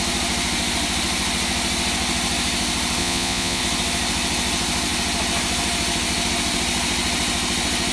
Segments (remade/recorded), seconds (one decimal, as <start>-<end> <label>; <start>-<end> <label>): 0.0-3.0 recorded; 3.0-3.6 remade; 3.6-7.9 recorded